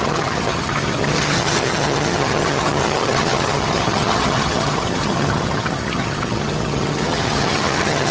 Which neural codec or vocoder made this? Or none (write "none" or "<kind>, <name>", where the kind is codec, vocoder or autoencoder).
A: vocoder, HiFi-GAN